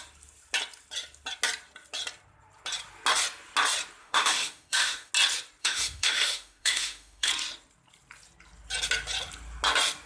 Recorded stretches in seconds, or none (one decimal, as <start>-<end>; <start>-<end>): 0.0-4.0; 5.1-5.6; 7.3-10.1